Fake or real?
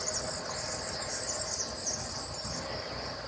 real